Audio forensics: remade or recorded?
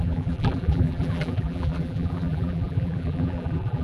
remade